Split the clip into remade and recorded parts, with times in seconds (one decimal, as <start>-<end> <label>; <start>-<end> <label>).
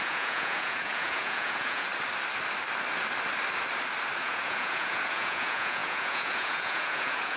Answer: 0.0-1.9 remade; 1.9-4.2 recorded; 4.2-7.4 remade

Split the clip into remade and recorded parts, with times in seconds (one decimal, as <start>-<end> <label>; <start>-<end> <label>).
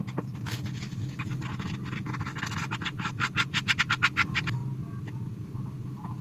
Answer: 0.0-6.2 recorded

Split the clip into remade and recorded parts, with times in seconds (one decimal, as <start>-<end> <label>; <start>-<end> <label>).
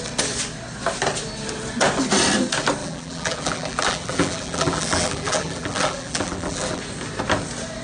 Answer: 0.0-2.8 recorded; 2.8-6.8 remade; 6.8-7.8 recorded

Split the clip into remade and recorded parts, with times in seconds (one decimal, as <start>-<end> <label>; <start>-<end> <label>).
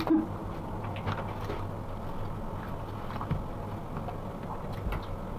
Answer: 0.0-5.4 recorded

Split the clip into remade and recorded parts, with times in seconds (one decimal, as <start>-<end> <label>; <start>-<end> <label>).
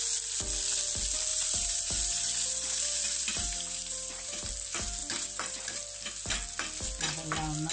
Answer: 0.0-1.3 recorded; 1.3-4.4 remade; 4.4-5.0 recorded; 5.0-5.8 remade; 5.8-7.7 recorded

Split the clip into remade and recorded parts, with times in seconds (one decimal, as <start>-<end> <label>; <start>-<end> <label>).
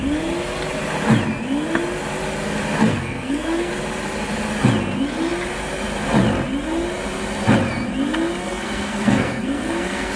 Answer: 0.0-2.8 recorded; 2.8-3.7 remade; 3.7-8.4 recorded; 8.4-10.2 remade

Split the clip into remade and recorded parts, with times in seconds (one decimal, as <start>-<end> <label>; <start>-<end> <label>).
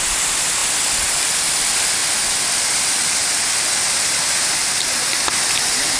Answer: 0.0-6.0 recorded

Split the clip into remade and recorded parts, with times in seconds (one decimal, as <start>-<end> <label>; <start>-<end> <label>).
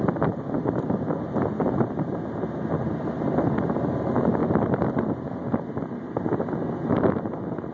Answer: 0.0-7.7 recorded